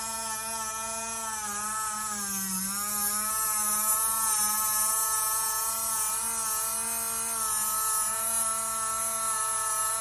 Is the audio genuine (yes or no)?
yes